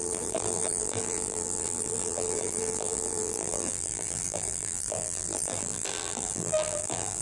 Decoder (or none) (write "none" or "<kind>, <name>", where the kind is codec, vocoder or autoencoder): vocoder, BigVGAN v2